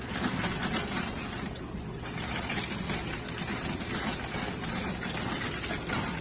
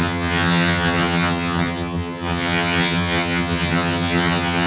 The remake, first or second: second